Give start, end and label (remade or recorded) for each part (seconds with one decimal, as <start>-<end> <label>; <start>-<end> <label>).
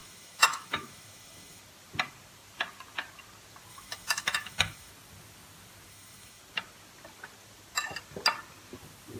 0.0-1.6 remade; 1.6-3.7 recorded; 3.7-4.9 remade; 4.9-5.9 recorded; 5.9-6.4 remade; 6.4-9.2 recorded